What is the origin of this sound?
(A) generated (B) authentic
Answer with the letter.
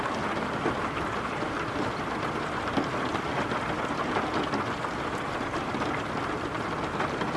B